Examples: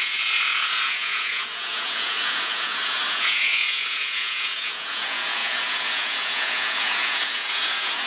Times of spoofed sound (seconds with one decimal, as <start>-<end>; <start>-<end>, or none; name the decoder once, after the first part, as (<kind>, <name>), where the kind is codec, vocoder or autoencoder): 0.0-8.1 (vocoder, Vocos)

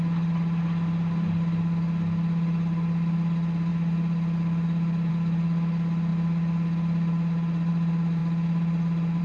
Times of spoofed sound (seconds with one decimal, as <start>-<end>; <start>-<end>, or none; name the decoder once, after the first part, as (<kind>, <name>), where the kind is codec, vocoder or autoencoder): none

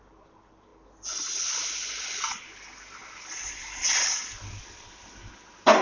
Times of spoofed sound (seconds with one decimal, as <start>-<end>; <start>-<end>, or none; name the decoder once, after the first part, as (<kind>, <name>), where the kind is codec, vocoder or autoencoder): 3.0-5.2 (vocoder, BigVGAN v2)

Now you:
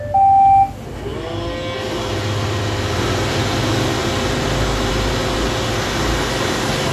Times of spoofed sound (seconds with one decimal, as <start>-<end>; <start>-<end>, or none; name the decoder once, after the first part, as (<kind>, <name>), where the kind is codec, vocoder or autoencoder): none